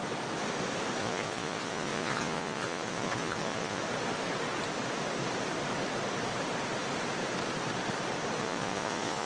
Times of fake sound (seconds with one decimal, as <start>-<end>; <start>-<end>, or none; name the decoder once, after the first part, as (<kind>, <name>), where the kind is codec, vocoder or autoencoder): 1.0-3.8 (vocoder, Vocos); 8.4-9.3